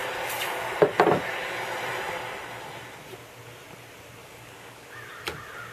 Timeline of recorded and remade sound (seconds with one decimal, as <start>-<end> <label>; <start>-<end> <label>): 0.0-4.2 recorded; 4.2-4.9 remade; 4.9-5.7 recorded